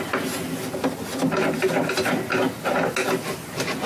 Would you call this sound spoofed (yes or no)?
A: no